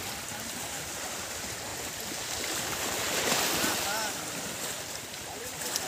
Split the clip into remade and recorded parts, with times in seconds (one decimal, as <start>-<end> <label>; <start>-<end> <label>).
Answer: 0.0-5.9 recorded